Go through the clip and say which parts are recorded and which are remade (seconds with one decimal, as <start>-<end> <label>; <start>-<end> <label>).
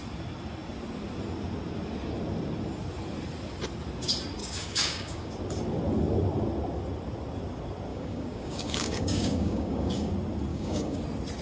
0.0-4.4 recorded; 4.4-5.3 remade; 5.3-7.9 recorded; 7.9-10.1 remade; 10.1-10.5 recorded; 10.5-11.0 remade; 11.0-11.4 recorded